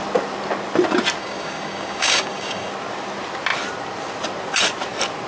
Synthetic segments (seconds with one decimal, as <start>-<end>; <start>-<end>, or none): 1.2-2.7